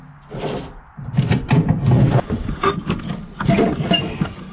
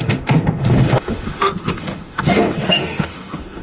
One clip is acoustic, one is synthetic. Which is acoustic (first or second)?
first